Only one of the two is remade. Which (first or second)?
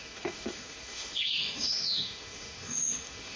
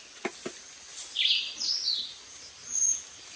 first